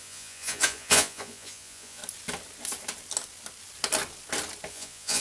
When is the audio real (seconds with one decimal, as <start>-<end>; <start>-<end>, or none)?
2.0-4.7